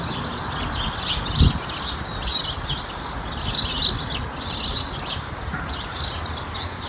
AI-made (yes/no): no